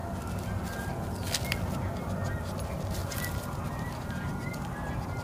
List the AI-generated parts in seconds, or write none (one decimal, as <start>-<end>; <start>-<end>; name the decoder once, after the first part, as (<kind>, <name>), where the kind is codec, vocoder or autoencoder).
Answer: 3.0-4.2 (vocoder, BigVGAN v2)

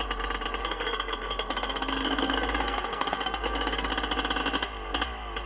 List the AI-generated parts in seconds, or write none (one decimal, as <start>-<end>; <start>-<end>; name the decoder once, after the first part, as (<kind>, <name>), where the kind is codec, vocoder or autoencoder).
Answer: 0.6-3.9 (codec, SNAC)

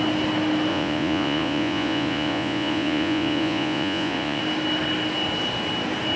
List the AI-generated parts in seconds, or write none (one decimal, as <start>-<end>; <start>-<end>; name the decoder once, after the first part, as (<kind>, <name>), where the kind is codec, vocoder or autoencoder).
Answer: 0.7-4.4 (vocoder, Vocos)

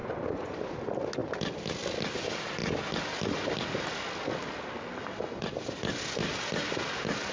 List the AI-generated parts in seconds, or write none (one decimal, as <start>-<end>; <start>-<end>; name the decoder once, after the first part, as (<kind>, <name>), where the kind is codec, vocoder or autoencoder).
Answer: 0.0-0.7 (vocoder, Vocos)

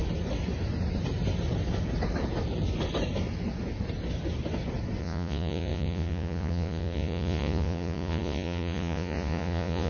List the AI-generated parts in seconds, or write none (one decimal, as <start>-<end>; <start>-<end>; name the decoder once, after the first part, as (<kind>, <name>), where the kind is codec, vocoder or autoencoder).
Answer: 5.0-9.9 (vocoder, Vocos)